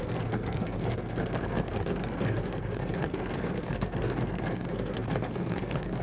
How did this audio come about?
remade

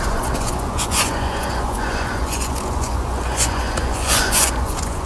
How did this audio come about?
remade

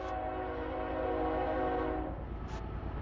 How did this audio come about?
recorded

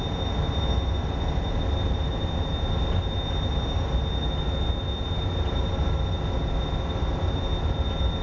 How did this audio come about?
recorded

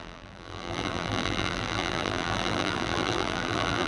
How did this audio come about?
remade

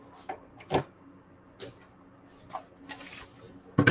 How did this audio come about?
recorded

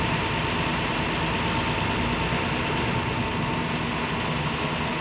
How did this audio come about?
recorded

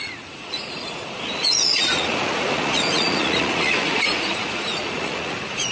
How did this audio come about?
remade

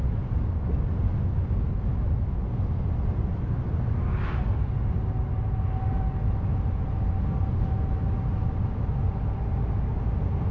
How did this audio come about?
recorded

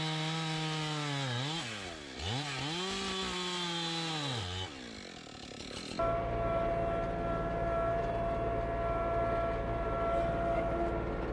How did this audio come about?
recorded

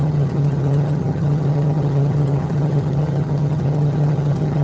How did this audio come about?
remade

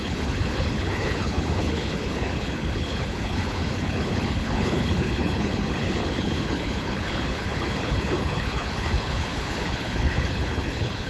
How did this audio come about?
remade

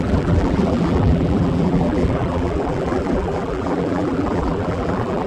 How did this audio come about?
remade